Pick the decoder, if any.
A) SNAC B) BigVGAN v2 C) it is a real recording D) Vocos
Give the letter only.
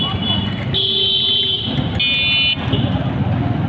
C